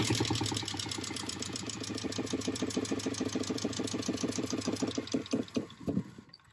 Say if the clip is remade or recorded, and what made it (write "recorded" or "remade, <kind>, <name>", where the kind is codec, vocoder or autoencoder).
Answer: remade, vocoder, BigVGAN v2